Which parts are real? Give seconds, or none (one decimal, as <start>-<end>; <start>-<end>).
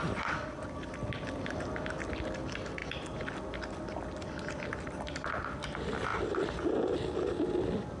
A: 0.0-8.0